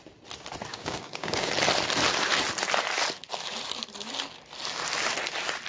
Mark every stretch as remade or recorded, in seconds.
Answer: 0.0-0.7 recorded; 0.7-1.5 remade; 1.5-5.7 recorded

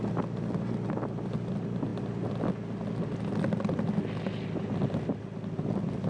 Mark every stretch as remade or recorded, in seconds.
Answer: 0.0-6.1 recorded

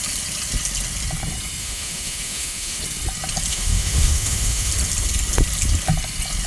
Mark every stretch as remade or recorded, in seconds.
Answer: 0.0-1.6 recorded; 1.6-2.8 remade; 2.8-3.5 recorded; 3.5-4.7 remade; 4.7-6.5 recorded

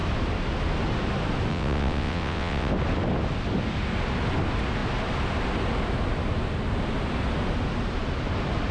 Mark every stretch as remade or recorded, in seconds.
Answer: 0.0-1.5 recorded; 1.5-2.7 remade; 2.7-8.7 recorded